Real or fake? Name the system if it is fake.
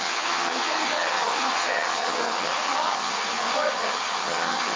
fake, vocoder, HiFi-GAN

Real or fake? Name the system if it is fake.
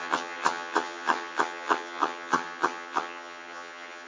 fake, vocoder, HiFi-GAN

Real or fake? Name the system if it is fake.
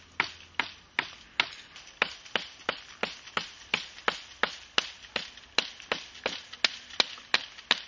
real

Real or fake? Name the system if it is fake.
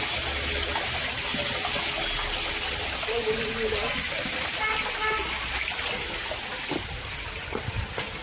real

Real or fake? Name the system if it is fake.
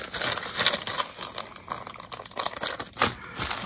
real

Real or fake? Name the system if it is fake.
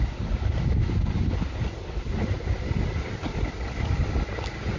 real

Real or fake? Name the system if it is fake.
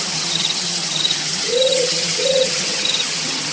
fake, vocoder, HiFi-GAN